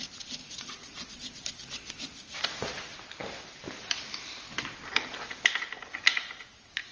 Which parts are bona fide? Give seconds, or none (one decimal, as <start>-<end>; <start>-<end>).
0.0-0.4; 1.4-6.9